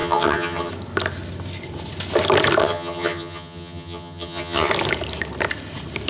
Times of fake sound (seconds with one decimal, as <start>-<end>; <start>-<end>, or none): 0.0-0.7; 2.6-4.7